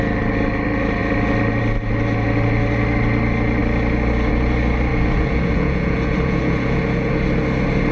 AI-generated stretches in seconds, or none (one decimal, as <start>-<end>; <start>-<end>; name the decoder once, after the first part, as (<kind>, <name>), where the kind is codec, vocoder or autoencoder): 4.9-7.1 (vocoder, Vocos)

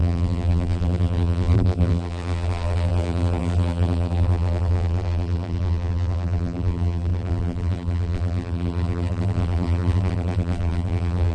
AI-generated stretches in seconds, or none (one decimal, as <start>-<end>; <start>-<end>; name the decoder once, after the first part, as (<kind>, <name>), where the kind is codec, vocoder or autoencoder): 0.0-11.3 (vocoder, BigVGAN v2)

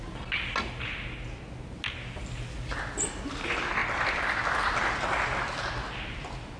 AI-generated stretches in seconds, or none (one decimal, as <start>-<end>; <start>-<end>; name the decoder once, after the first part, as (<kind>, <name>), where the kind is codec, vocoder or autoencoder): none